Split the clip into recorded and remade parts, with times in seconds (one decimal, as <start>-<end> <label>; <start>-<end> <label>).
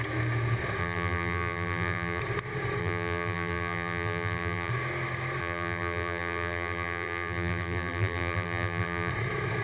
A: 0.0-0.8 recorded; 0.8-2.2 remade; 2.2-2.8 recorded; 2.8-4.7 remade; 4.7-5.4 recorded; 5.4-9.1 remade; 9.1-9.6 recorded